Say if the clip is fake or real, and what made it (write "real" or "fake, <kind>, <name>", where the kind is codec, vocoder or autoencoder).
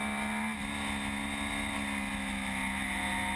real